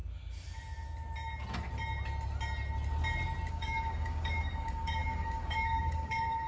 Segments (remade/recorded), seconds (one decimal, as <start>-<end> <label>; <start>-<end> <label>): 0.0-3.5 recorded; 3.5-6.5 remade